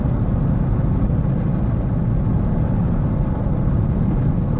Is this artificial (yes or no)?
no